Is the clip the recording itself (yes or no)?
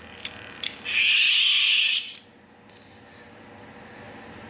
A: yes